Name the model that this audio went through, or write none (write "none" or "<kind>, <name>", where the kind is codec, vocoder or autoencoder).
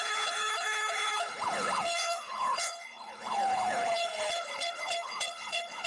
codec, HILCodec